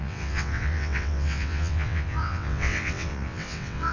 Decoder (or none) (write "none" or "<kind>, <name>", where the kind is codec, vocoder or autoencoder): vocoder, WaveNeXt